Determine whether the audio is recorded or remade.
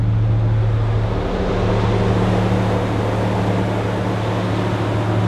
recorded